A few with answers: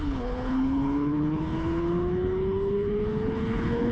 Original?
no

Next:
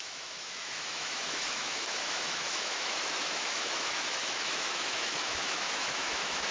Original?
no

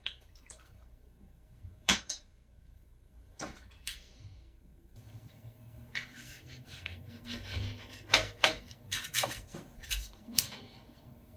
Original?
no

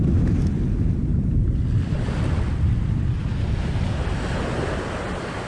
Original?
yes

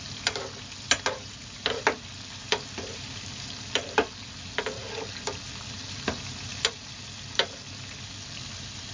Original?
yes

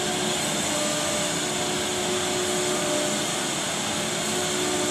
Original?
yes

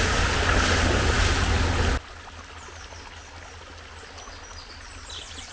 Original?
yes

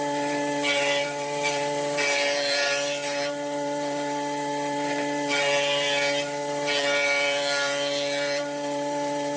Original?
no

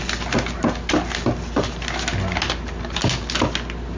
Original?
yes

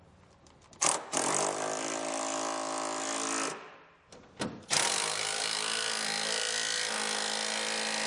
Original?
yes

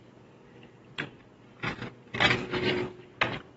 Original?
yes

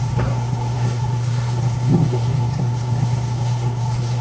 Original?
no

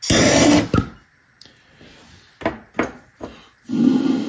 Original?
yes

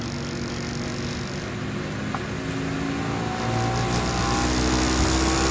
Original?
yes